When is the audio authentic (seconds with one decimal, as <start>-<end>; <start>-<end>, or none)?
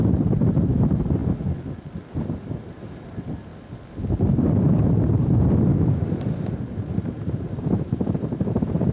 1.2-1.9; 3.5-4.4; 5.7-7.1